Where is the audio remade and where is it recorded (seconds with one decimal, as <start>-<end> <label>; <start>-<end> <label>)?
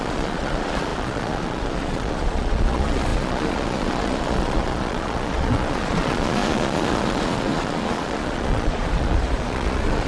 0.0-10.1 remade